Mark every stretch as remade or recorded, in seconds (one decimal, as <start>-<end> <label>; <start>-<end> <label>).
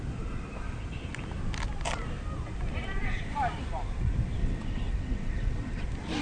0.0-4.4 recorded; 4.4-5.8 remade; 5.8-6.2 recorded